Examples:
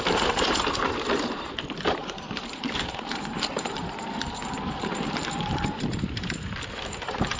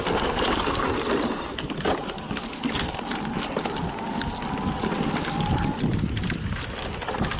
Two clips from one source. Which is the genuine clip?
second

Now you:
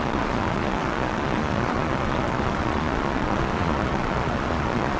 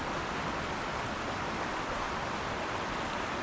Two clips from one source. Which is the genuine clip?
second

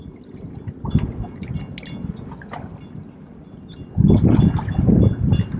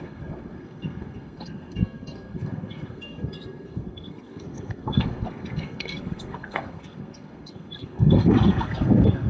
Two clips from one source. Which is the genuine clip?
first